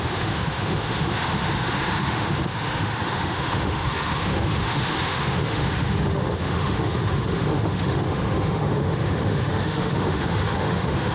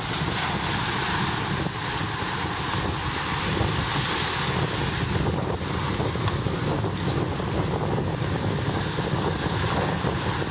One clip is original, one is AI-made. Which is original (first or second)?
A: second